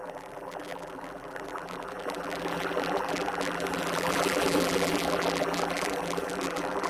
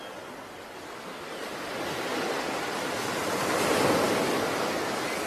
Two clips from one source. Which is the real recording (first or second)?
second